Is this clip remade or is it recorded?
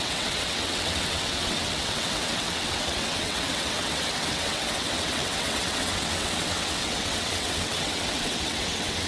remade